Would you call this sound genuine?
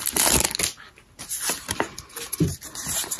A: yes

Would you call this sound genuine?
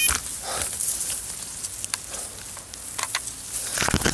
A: yes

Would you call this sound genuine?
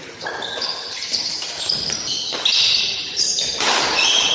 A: yes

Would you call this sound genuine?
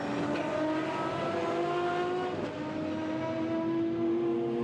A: yes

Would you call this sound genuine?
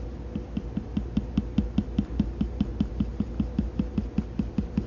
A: yes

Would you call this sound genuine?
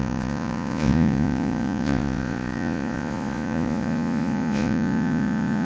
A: no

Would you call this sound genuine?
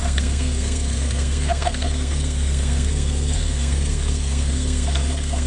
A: no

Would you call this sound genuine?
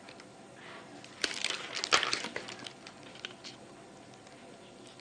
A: yes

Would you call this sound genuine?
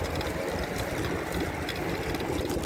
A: yes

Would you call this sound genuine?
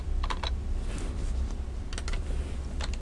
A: yes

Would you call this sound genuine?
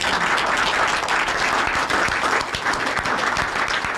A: yes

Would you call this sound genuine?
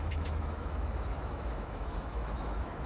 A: no